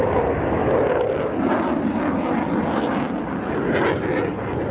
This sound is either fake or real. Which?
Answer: real